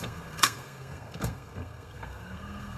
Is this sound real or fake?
fake